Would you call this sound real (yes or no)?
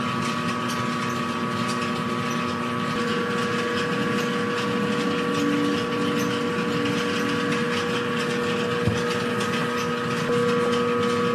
yes